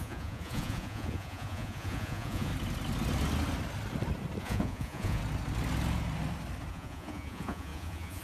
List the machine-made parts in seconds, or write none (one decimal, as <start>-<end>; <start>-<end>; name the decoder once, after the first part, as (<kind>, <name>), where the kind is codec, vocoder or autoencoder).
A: 0.0-2.5 (vocoder, Vocos); 4.4-5.2; 6.7-8.2